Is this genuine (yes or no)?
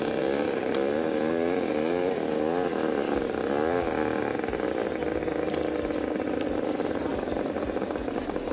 yes